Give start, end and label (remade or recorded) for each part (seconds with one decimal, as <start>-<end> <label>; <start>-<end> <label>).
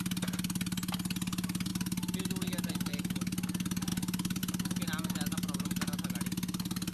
0.0-6.9 recorded